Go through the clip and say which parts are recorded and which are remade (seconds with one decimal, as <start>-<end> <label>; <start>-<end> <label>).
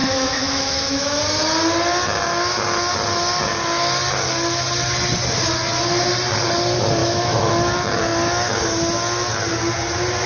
0.0-1.2 remade; 1.2-7.0 recorded; 7.0-7.5 remade; 7.5-10.3 recorded